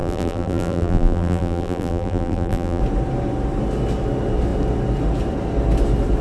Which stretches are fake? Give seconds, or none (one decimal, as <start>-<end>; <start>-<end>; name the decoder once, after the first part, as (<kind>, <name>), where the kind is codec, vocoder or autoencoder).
0.0-2.8 (vocoder, BigVGAN v2)